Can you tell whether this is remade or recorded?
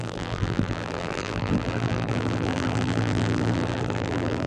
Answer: remade